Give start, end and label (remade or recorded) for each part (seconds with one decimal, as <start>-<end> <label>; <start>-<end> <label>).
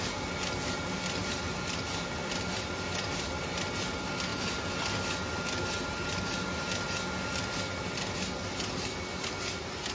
0.0-9.9 recorded